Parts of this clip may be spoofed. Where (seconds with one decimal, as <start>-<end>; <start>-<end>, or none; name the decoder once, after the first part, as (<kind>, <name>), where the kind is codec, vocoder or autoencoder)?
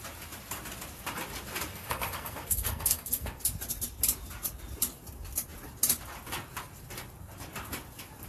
1.7-3.4 (codec, SNAC)